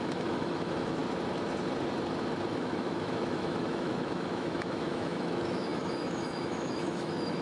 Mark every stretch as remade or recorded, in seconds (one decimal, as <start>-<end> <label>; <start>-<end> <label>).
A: 0.0-1.0 remade; 1.0-2.5 recorded; 2.5-7.4 remade